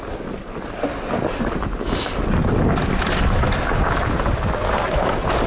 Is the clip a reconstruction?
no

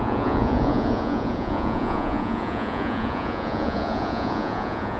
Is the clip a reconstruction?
yes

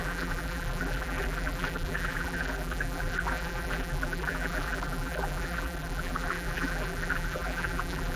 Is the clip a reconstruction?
yes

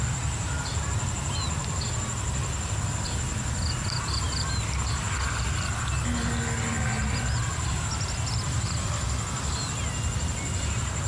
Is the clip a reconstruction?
no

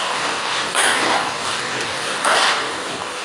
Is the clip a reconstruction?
yes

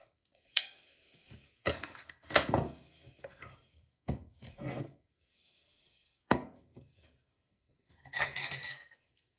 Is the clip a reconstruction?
yes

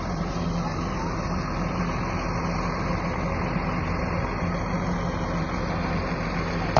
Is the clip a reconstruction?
no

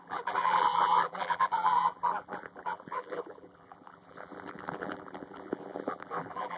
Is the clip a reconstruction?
yes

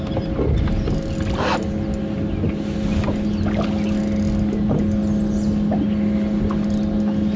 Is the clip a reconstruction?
no